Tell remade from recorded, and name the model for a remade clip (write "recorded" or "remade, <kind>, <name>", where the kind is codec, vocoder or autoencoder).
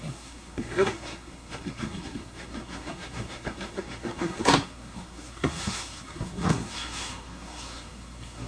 remade, codec, SNAC